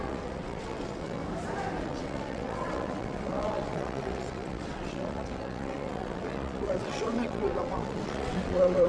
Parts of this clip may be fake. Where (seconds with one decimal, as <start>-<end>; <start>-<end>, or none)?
0.0-1.2; 1.8-8.9